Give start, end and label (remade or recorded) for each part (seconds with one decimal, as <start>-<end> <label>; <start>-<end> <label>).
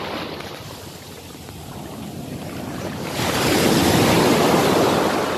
0.0-5.4 recorded